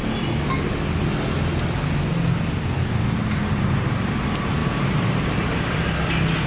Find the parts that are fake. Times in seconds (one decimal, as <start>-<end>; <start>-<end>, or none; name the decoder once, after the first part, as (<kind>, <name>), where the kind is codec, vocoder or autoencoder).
4.6-5.9 (vocoder, BigVGAN v2)